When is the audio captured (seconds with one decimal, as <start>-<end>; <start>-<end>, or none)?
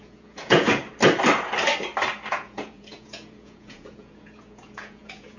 0.8-2.3